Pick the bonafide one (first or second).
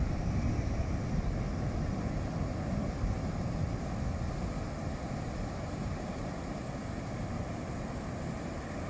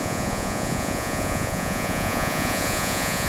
first